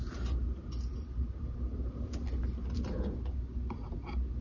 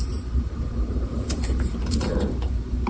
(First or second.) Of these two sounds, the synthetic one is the second